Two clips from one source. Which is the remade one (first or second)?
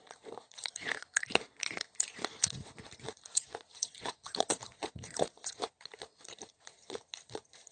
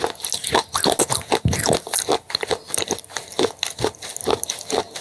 first